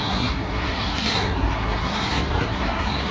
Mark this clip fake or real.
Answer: fake